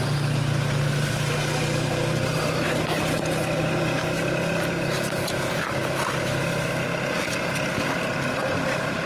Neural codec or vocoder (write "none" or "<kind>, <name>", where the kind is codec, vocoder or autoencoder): none